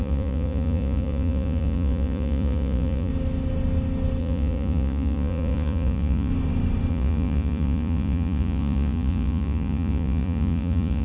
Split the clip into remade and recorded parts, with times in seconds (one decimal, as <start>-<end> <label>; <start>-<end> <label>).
0.0-3.1 remade; 3.1-4.2 recorded; 4.2-6.3 remade; 6.3-6.9 recorded; 6.9-11.0 remade